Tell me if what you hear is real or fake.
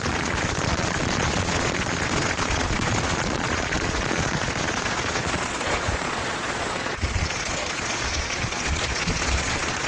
fake